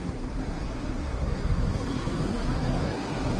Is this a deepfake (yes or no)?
yes